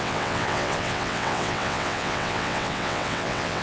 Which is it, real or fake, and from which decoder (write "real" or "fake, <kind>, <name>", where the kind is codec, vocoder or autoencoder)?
fake, vocoder, WaveNeXt